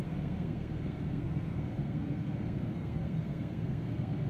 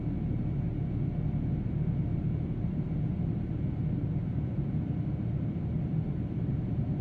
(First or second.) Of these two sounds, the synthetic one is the first